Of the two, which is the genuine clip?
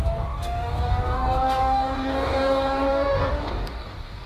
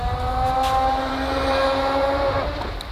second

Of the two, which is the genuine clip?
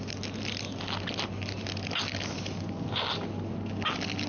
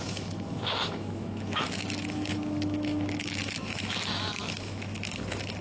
first